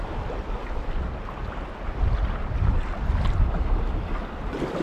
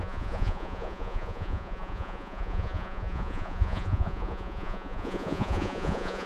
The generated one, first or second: second